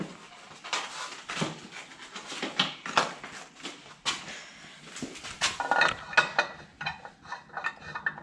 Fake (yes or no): no